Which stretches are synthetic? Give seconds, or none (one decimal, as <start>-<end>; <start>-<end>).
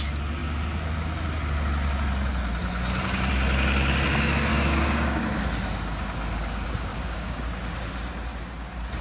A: 4.5-5.2; 6.9-7.4